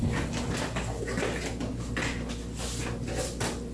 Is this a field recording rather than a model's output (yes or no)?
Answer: yes